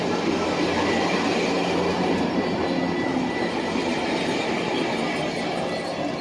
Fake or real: real